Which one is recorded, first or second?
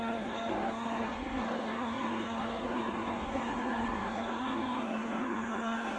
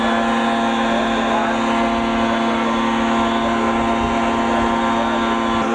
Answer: second